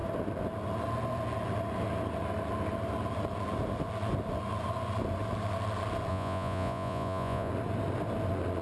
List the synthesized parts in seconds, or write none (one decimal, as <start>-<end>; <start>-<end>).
6.1-7.5